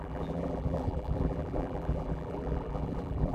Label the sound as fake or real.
fake